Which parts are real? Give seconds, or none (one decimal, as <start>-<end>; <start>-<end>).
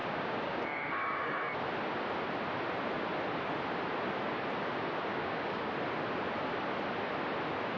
1.4-5.1; 5.7-7.8